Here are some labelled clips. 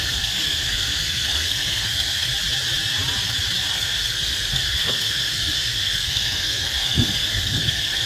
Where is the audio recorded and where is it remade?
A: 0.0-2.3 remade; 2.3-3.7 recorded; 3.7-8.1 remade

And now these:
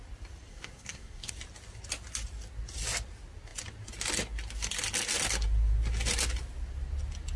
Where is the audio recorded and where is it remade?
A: 0.0-0.5 recorded; 0.5-1.3 remade; 1.3-7.4 recorded